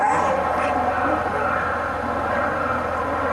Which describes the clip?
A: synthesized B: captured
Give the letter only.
B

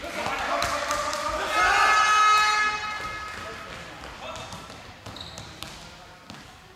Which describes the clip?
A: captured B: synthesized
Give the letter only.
A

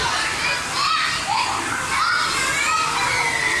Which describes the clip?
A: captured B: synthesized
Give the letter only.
A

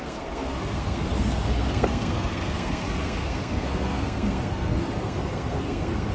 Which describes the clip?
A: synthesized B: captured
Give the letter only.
A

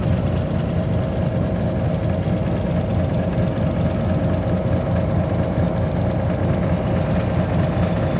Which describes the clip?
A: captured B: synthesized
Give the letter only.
A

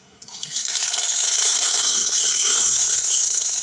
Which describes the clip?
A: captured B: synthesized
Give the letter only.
B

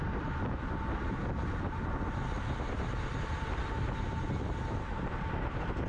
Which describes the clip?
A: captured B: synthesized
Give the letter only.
A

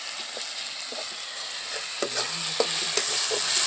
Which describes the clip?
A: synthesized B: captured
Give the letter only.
B